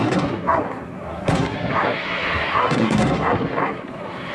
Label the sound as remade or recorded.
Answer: remade